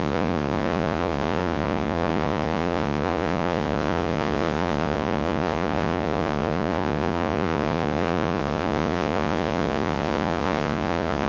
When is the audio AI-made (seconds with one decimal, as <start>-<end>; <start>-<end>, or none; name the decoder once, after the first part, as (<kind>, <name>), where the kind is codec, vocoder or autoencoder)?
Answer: 0.0-11.3 (vocoder, Vocos)

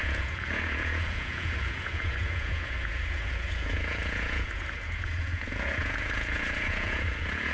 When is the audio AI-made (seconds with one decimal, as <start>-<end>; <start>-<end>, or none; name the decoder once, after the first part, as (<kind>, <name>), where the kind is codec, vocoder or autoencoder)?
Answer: 0.0-7.5 (vocoder, Vocos)

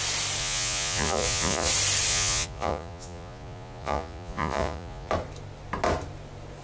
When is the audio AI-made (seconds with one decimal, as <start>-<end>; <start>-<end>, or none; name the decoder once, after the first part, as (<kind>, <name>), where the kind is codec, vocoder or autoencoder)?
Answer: 0.4-1.7 (vocoder, Vocos); 2.1-5.1

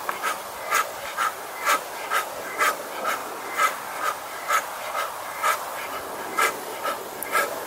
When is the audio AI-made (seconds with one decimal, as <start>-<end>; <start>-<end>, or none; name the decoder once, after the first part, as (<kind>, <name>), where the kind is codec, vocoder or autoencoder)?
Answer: none

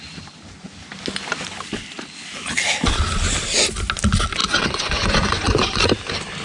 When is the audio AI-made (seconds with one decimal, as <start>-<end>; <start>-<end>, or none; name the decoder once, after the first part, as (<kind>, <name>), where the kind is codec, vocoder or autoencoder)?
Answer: 4.4-5.8 (vocoder, Vocos)

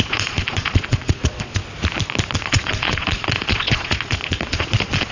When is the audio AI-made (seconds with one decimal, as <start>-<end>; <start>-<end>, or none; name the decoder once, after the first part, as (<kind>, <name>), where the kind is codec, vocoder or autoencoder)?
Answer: 0.0-1.6 (vocoder, Vocos); 2.3-5.1

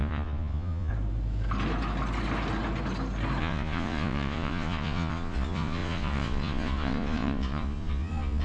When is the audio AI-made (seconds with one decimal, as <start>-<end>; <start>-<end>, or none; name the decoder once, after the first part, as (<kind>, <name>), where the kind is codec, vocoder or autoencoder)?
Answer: 0.0-0.9 (vocoder, Vocos); 3.4-8.4

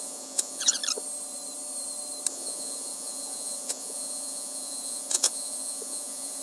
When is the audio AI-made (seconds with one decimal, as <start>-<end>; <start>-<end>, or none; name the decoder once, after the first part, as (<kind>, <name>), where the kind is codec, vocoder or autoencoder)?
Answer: 0.0-0.8 (vocoder, Vocos); 2.3-6.4